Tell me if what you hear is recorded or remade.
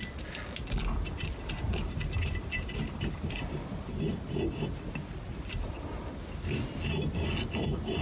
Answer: recorded